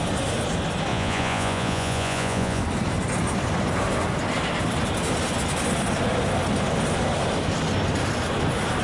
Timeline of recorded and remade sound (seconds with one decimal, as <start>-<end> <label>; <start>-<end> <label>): 0.0-0.9 recorded; 0.9-2.6 remade; 2.6-8.8 recorded